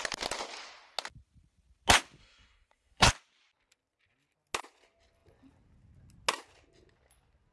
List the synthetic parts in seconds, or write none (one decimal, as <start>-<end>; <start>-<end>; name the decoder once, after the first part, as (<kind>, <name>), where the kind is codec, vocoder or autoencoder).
2.2-3.1 (codec, SNAC)

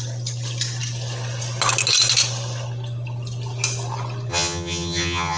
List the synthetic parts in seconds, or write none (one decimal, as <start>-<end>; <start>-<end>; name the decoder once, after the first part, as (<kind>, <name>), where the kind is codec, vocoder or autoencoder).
4.3-5.4 (vocoder, HiFi-GAN)

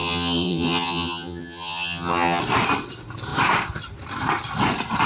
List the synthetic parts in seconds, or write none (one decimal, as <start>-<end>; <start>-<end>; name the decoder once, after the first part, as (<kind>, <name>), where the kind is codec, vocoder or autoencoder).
0.0-2.4 (vocoder, HiFi-GAN)

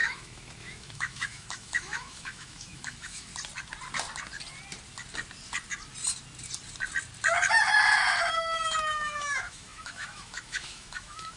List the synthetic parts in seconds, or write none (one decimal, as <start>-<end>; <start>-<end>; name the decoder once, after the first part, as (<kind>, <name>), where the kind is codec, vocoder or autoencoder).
0.0-3.3 (autoencoder, DAC-VAE); 8.3-11.4

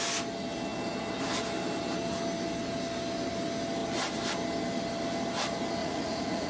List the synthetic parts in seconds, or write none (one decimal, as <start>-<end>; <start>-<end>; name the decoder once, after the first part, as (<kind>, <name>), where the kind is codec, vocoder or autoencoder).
5.8-6.5 (vocoder, Vocos)

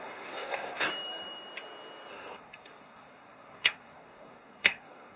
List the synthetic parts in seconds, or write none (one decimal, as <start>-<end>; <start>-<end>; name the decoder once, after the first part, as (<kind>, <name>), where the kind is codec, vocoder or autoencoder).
0.0-0.9 (codec, SNAC); 2.1-5.2

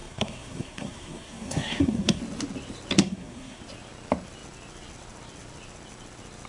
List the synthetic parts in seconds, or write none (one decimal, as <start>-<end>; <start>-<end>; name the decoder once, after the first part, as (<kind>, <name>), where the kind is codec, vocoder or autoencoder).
0.0-2.2 (codec, SNAC); 3.0-3.6

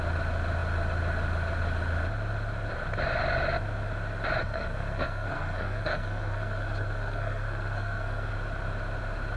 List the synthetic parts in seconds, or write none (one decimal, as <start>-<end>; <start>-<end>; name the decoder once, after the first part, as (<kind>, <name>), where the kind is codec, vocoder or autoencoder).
4.4-8.3 (codec, SNAC)